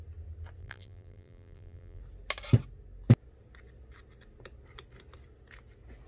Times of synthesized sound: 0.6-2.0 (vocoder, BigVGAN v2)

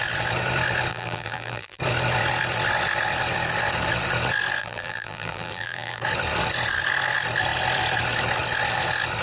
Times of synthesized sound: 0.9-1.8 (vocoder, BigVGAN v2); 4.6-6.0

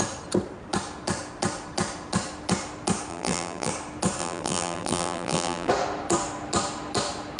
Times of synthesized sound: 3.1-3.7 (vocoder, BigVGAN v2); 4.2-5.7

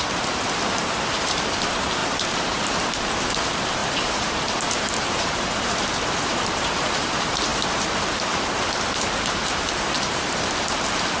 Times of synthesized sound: 0.0-11.2 (vocoder, BigVGAN v2)

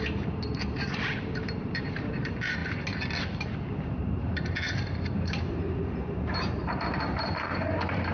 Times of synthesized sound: 0.0-2.6 (vocoder, BigVGAN v2); 3.9-8.1

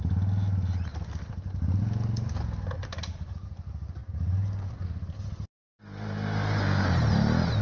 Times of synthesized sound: 0.9-1.8 (vocoder, BigVGAN v2)

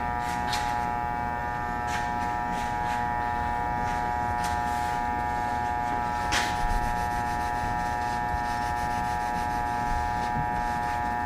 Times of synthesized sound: none

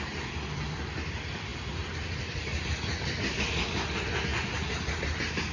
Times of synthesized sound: 0.0-1.5 (vocoder, BigVGAN v2); 3.3-4.3; 5.0-5.5